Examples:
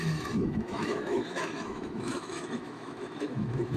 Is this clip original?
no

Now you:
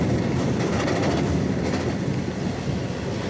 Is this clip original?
yes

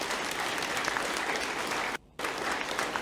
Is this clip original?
yes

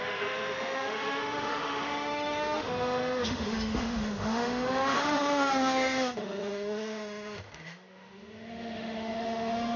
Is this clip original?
no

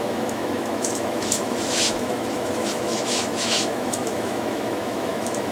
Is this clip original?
no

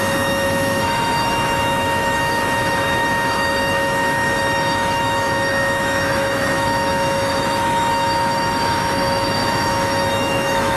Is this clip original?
no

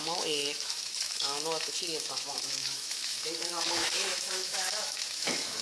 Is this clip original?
no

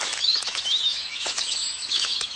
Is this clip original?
no